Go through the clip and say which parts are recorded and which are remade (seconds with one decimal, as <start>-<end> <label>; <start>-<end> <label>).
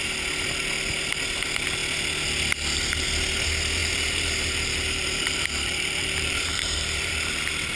0.0-3.8 recorded; 3.8-7.1 remade; 7.1-7.8 recorded